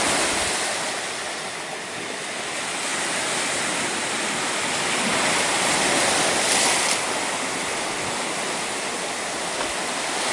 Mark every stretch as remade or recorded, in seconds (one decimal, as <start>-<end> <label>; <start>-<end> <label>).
0.0-10.3 recorded